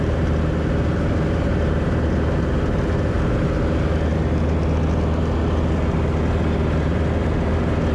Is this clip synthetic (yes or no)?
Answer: no